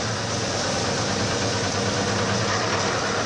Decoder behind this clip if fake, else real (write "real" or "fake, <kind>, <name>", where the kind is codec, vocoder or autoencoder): real